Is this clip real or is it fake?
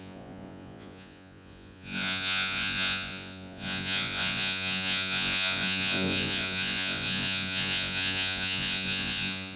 fake